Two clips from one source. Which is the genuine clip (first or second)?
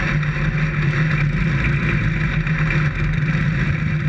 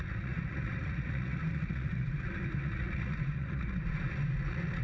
first